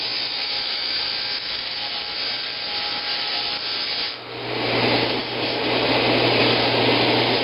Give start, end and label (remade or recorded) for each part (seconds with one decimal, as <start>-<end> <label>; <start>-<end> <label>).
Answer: 0.0-0.4 recorded; 0.4-1.0 remade; 1.0-7.4 recorded